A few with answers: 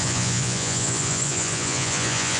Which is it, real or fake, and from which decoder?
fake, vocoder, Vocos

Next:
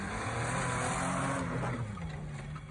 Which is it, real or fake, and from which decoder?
real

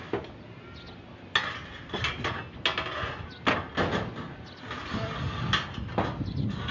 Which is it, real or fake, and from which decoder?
real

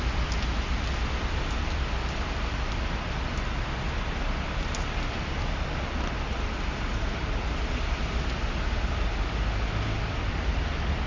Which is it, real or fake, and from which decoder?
real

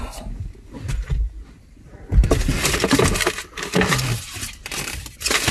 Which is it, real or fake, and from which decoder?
real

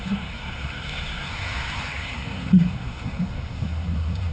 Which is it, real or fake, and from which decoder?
fake, codec, SNAC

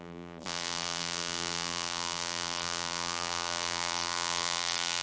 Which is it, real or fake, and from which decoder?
fake, vocoder, BigVGAN v2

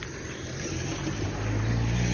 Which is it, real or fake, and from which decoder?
real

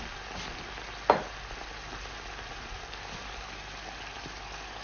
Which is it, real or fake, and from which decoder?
real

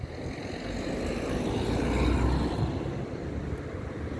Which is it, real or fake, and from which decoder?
real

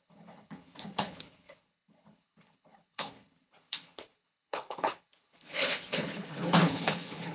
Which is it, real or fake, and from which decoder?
fake, codec, HILCodec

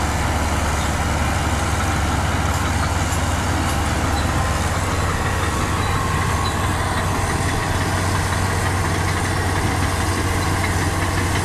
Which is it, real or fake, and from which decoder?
real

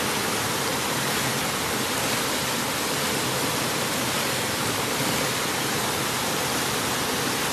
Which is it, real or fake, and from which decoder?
real